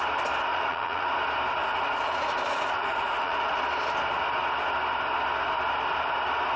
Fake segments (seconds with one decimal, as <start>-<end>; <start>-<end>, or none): 0.5-1.1; 1.6-3.6